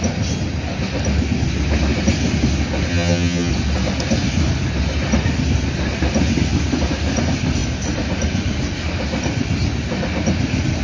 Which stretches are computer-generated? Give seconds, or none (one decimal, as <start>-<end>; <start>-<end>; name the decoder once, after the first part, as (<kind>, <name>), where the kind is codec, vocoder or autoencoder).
2.9-3.5 (vocoder, HiFi-GAN)